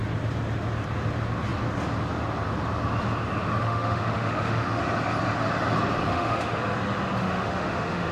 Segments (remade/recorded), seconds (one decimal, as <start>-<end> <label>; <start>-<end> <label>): 0.0-3.6 recorded; 3.6-4.8 remade; 4.8-6.1 recorded; 6.1-6.6 remade; 6.6-7.2 recorded; 7.2-8.1 remade